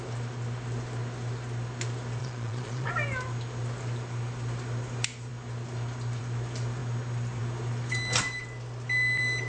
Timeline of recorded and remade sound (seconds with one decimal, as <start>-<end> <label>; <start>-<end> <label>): 0.0-2.2 recorded; 2.2-2.9 remade; 2.9-9.5 recorded